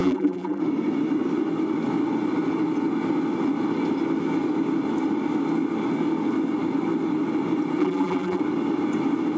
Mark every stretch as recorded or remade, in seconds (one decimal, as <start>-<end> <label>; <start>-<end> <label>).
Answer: 0.0-0.6 remade; 0.6-7.8 recorded; 7.8-8.4 remade; 8.4-9.4 recorded